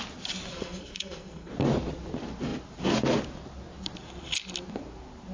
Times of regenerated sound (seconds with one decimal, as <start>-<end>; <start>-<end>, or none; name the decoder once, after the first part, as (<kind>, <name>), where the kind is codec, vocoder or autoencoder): 0.5-1.5 (codec, SNAC)